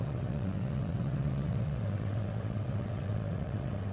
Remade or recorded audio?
remade